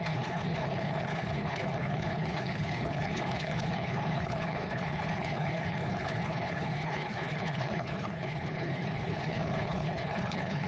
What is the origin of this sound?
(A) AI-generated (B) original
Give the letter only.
A